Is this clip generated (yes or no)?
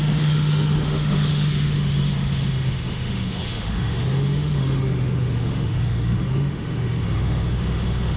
yes